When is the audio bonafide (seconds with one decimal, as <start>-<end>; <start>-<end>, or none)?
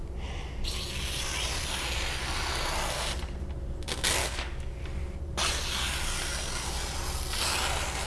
0.0-4.2; 4.8-8.1